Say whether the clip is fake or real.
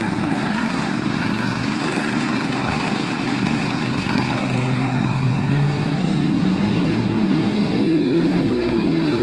fake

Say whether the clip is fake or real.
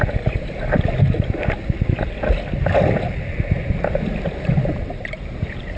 real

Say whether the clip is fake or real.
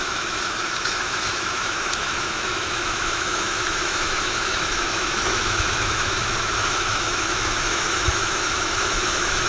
fake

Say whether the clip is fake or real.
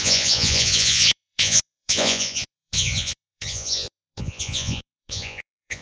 fake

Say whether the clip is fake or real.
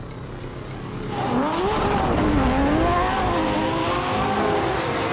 real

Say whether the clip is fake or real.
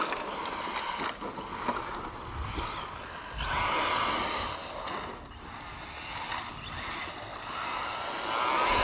real